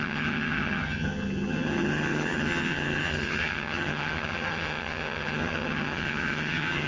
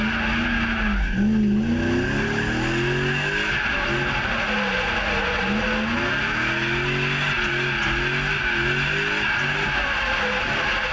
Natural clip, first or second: second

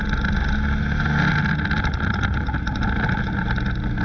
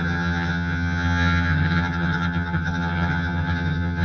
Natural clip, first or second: first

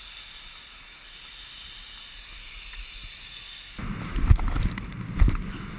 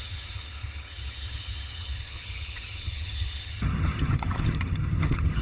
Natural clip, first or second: first